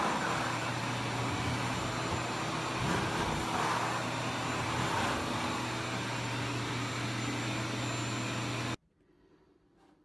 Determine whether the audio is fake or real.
real